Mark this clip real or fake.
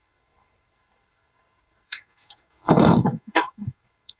fake